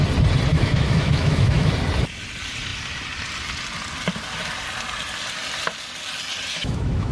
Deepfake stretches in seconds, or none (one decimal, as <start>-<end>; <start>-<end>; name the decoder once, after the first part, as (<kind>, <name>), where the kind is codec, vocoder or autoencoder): 0.5-1.7 (autoencoder, DAC-VAE); 6.5-7.1